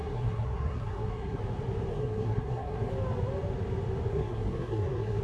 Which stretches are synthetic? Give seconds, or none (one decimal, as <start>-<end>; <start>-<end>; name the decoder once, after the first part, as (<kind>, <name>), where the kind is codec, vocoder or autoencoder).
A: 0.0-1.4 (codec, SNAC); 1.9-2.9; 4.1-5.2